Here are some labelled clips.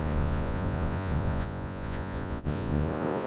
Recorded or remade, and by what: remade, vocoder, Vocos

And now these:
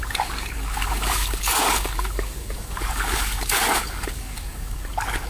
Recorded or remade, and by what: remade, codec, DAC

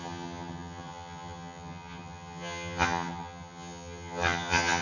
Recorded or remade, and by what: remade, vocoder, HiFi-GAN